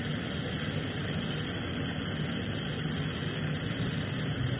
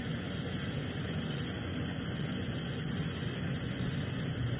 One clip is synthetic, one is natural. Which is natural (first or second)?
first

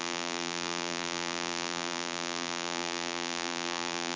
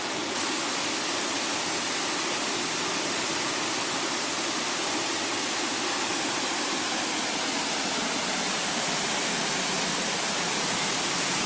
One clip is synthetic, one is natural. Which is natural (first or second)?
second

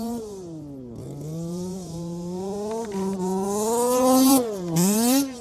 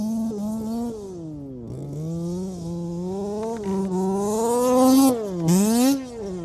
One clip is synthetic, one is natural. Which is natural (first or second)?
second